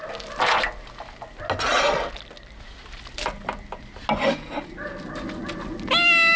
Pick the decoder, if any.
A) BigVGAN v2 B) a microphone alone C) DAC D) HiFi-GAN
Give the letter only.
B